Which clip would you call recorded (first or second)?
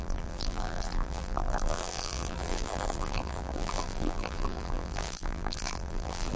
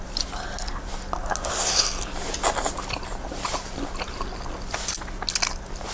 second